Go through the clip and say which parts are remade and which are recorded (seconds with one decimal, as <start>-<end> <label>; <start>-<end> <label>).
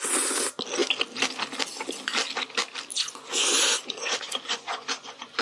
0.0-2.9 recorded; 2.9-5.4 remade